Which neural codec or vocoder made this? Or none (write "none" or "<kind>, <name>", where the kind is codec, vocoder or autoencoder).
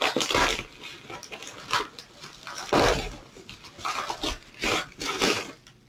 none